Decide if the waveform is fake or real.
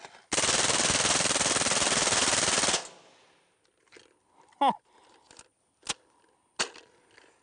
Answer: real